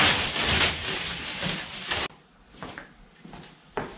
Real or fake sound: real